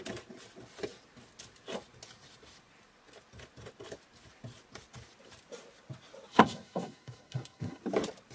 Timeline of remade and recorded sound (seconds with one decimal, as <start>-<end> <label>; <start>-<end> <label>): 0.0-6.3 recorded; 6.3-7.8 remade; 7.8-8.3 recorded